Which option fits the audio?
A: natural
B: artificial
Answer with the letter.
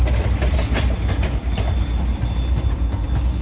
A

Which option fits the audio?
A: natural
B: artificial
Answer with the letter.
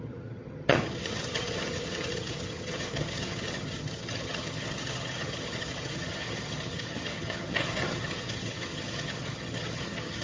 B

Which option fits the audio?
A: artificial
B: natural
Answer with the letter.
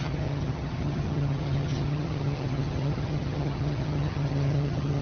A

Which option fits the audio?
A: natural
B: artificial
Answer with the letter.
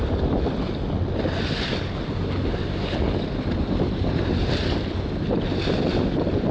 A